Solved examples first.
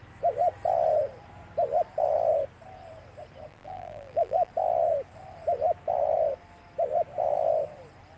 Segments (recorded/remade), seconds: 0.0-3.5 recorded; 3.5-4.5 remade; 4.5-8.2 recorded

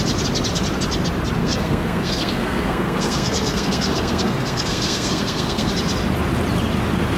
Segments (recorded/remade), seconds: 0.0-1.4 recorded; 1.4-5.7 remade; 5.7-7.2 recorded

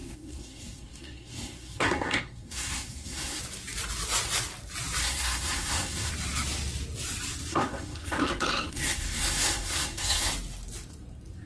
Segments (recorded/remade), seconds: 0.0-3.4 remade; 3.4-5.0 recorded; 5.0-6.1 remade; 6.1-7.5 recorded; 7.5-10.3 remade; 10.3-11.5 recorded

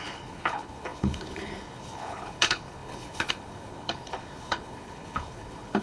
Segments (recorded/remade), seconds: 0.0-5.8 remade